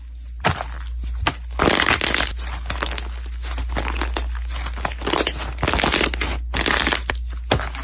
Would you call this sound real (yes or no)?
yes